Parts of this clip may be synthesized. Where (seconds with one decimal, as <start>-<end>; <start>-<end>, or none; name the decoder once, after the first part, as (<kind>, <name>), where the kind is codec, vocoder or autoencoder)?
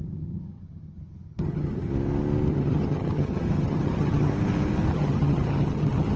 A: 0.0-1.9 (vocoder, HiFi-GAN); 2.5-4.3; 4.9-6.2